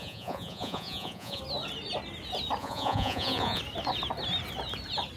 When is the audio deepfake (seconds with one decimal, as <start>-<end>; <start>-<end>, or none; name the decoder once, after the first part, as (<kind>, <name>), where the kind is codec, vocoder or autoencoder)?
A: 0.0-1.4 (vocoder, Vocos); 2.6-3.6